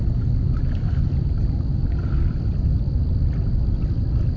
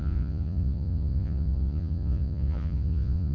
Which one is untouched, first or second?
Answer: first